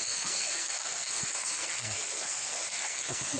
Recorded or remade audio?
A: remade